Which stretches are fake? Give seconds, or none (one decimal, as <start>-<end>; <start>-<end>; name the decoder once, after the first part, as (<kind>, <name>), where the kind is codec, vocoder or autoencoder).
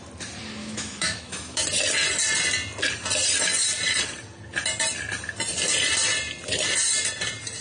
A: 0.6-1.6 (autoencoder, DAC-VAE)